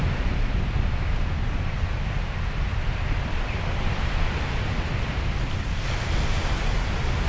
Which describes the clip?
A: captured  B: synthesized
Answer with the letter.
A